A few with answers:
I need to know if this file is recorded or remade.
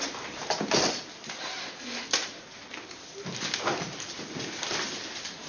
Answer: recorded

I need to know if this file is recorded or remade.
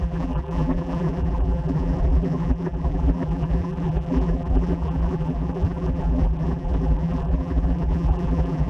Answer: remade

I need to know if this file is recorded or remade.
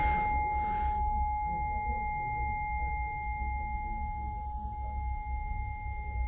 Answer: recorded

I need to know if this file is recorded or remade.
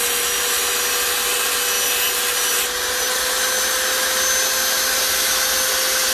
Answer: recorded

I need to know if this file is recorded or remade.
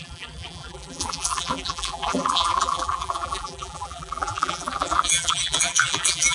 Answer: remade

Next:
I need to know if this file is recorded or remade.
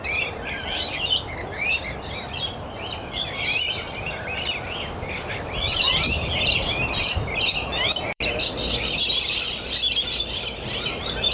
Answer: remade